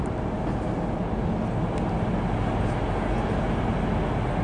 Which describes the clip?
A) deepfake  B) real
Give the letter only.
B